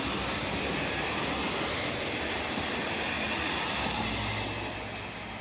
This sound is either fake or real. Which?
real